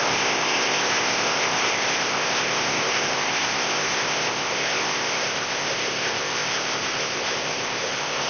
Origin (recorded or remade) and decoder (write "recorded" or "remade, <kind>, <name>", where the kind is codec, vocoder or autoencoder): remade, codec, ZipCodec